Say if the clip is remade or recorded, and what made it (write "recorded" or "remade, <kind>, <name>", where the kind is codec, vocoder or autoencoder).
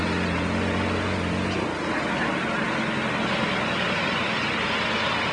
recorded